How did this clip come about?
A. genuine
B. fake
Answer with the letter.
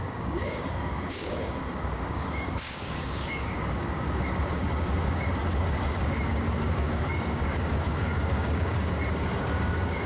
B